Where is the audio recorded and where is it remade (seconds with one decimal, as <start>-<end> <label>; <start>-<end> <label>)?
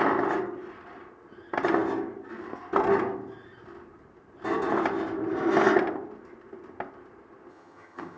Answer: 0.0-7.5 recorded; 7.5-8.2 remade